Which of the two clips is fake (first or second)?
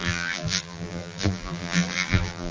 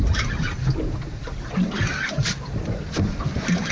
first